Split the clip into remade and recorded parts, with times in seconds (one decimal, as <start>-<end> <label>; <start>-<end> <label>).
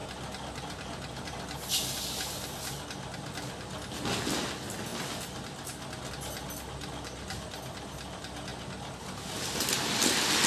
0.0-10.5 recorded